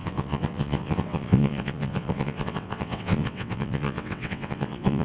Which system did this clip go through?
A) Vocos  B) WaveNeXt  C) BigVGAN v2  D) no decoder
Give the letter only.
B